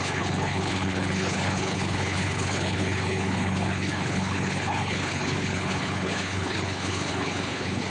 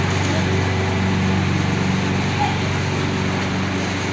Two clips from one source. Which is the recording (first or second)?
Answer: second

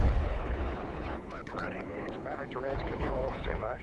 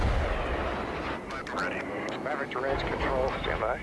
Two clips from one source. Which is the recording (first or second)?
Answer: second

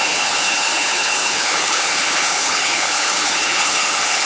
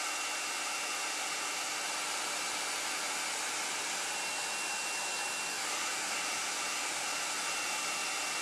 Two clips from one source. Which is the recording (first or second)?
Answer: second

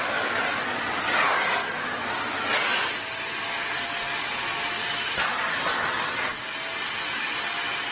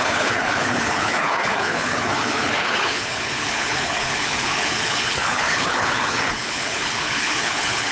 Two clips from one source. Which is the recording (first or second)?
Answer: first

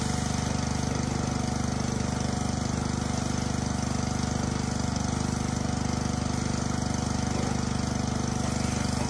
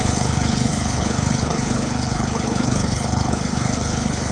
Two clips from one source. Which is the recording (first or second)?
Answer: first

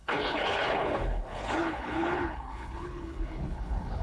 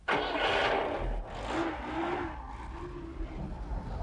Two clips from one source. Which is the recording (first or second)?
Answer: second